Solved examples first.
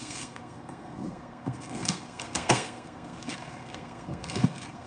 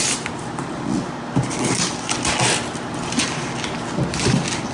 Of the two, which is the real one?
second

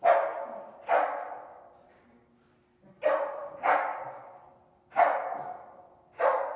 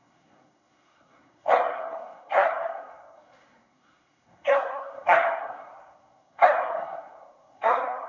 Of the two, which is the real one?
first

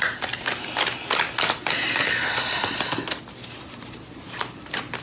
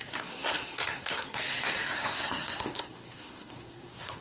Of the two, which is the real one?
first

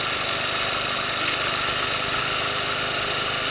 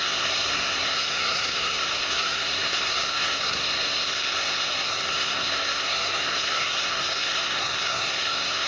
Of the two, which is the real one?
first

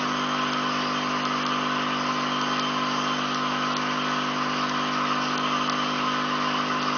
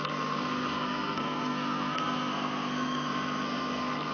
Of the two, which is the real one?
first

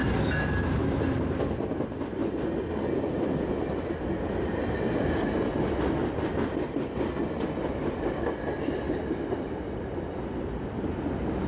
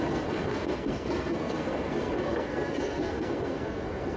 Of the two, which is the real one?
first